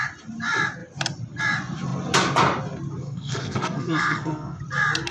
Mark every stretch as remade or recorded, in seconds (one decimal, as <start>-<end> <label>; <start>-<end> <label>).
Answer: 0.0-3.0 recorded; 3.0-4.6 remade; 4.6-5.1 recorded